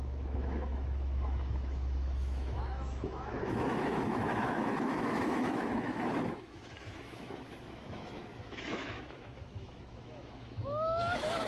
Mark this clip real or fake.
fake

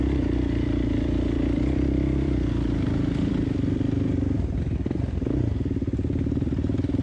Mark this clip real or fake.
fake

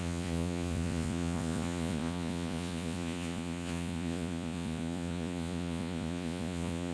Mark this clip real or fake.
fake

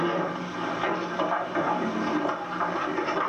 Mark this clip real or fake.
real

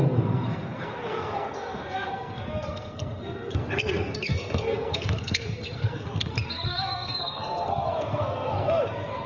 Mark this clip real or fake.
fake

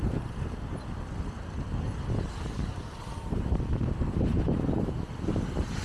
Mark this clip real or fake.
real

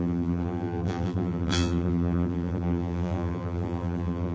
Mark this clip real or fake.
fake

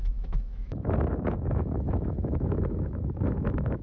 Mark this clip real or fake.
fake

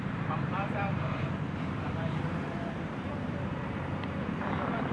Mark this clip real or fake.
fake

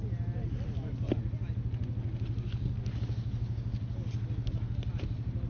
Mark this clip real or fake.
real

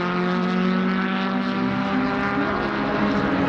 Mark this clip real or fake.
real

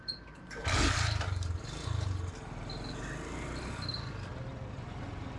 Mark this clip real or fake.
real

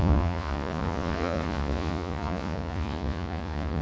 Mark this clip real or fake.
fake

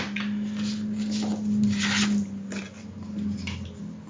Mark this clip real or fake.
real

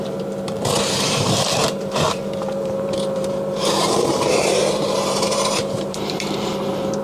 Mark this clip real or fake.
fake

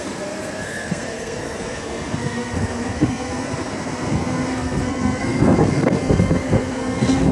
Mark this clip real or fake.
fake